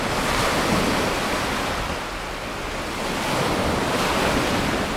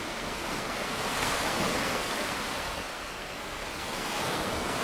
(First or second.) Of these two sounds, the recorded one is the first